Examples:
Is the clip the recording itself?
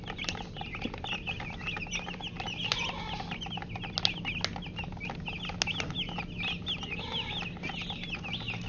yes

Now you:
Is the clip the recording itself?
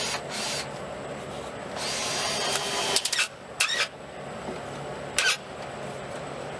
yes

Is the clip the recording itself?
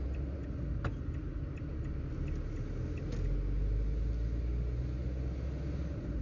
yes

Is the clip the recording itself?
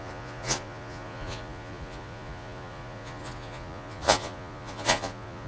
no